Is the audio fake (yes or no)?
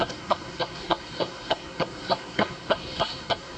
yes